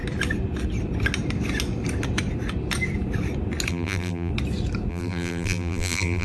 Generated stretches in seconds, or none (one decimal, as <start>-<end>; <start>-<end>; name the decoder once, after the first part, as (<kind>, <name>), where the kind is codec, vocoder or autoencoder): 3.7-4.3 (vocoder, BigVGAN v2); 4.9-6.2